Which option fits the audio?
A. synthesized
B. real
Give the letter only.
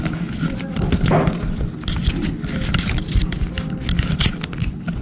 B